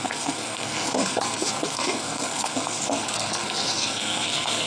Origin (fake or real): fake